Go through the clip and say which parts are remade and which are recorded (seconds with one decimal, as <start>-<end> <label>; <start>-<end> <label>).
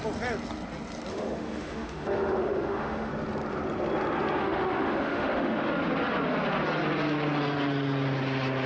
0.0-1.1 recorded; 1.1-3.1 remade; 3.1-4.4 recorded; 4.4-5.7 remade; 5.7-8.7 recorded